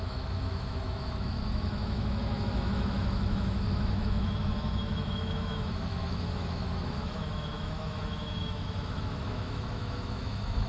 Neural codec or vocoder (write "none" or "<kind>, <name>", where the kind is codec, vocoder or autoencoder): autoencoder, DAC-VAE